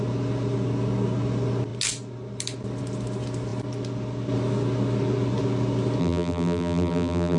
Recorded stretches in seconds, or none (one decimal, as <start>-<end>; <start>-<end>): 0.0-6.0